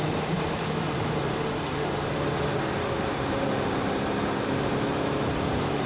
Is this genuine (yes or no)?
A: no